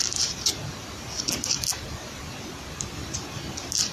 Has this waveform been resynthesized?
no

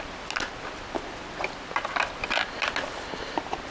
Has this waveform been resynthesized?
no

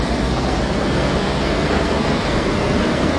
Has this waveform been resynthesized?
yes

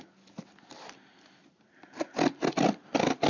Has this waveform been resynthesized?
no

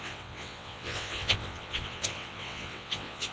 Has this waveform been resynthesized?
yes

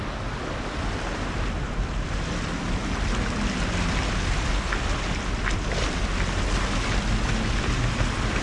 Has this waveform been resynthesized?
no